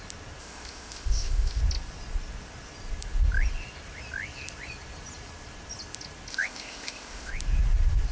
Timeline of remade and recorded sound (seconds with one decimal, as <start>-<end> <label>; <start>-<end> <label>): 0.0-0.4 recorded; 0.4-1.6 remade; 1.6-6.3 recorded; 6.3-7.3 remade; 7.3-8.1 recorded